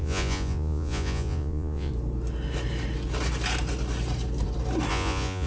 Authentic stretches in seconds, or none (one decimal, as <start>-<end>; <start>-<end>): 1.9-4.9